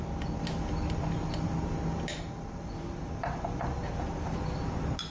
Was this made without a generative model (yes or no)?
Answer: yes